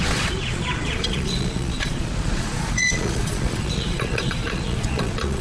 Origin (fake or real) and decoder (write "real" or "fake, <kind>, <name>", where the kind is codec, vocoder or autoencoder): fake, vocoder, Vocos